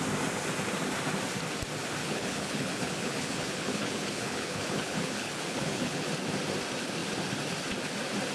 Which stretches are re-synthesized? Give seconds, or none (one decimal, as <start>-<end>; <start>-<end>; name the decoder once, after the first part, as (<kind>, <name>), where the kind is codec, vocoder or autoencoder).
2.0-6.1 (codec, HILCodec)